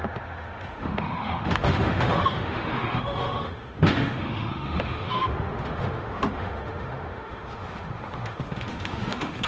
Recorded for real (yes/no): no